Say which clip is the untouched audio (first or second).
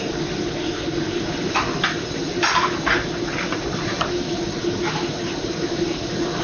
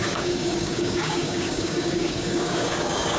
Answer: first